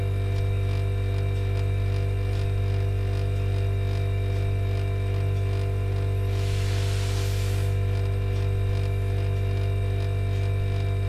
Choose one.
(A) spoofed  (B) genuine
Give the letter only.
B